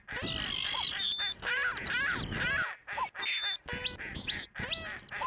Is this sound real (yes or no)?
yes